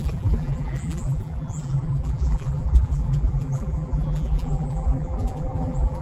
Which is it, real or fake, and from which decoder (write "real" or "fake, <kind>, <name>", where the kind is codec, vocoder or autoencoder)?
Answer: fake, vocoder, BigVGAN v2